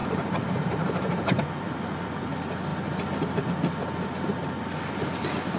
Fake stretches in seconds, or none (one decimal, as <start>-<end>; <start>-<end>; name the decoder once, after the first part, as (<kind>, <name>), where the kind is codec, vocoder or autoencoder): 0.0-2.3 (vocoder, BigVGAN v2)

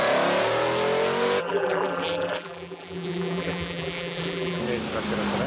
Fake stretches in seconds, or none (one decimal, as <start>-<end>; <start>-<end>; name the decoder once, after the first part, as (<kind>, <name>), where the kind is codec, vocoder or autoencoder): 1.4-4.6 (vocoder, BigVGAN v2)

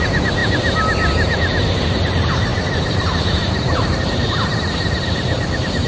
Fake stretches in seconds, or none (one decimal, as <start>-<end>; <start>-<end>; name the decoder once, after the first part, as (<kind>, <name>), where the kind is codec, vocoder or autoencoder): 2.5-4.0 (vocoder, BigVGAN v2)

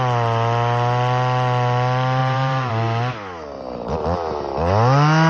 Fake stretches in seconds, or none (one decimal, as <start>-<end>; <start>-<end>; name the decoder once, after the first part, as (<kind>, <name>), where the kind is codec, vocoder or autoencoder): 2.2-2.7 (vocoder, BigVGAN v2)

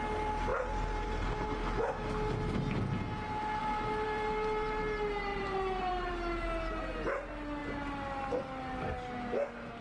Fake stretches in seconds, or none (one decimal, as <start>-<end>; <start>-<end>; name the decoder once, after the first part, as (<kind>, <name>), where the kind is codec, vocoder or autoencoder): 0.5-1.6 (vocoder, BigVGAN v2); 3.6-4.8; 5.3-6.1